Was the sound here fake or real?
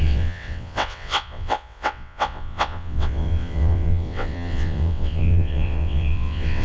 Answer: fake